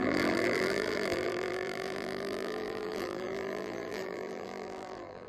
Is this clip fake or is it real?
fake